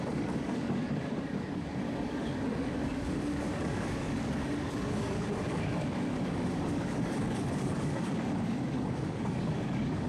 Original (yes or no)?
no